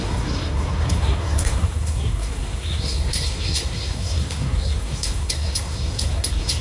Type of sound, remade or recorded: remade